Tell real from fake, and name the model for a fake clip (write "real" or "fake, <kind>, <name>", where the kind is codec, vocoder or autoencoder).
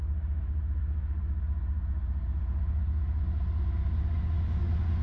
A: real